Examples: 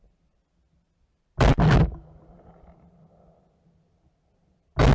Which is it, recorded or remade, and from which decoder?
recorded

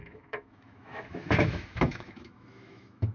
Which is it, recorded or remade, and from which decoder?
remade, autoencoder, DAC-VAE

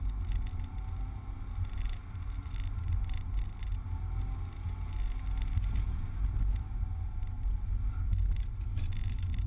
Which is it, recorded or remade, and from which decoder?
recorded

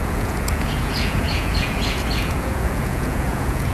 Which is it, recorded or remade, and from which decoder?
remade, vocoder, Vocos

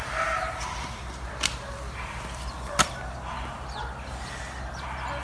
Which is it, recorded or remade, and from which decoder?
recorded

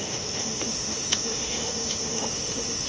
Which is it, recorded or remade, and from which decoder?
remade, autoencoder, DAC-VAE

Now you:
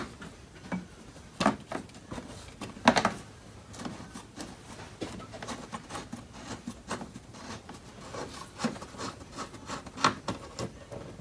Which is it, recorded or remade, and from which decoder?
recorded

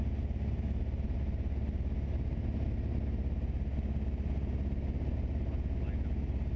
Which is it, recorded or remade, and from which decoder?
recorded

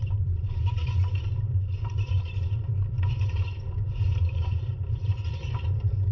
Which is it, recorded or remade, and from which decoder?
remade, vocoder, BigVGAN v2